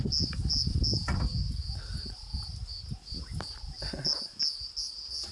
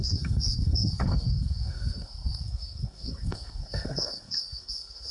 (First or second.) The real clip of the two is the first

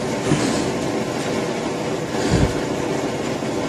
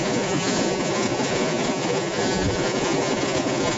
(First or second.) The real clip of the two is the first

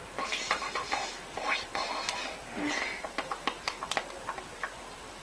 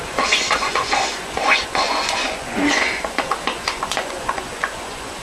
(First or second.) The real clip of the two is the first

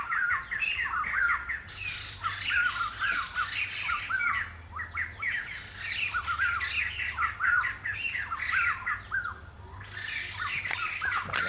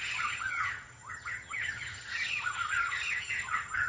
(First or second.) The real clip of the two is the first